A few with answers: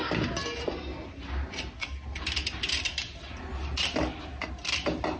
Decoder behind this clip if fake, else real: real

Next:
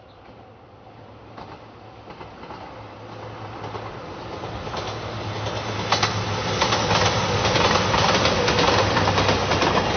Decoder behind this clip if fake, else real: real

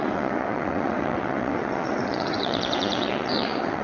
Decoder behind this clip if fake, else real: fake, vocoder, WaveNeXt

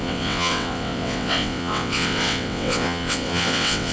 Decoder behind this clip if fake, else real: fake, vocoder, WaveNeXt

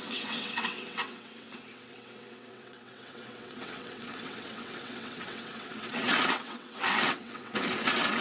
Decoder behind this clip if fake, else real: fake, vocoder, WaveNeXt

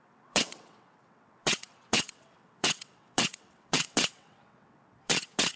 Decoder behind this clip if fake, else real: fake, vocoder, WaveNeXt